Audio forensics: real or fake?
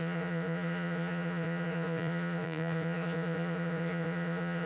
fake